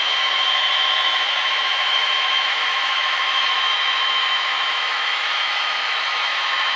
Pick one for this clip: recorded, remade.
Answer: remade